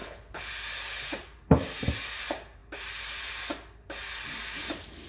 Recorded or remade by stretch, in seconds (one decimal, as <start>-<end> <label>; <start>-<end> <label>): 0.0-0.5 remade; 0.5-5.1 recorded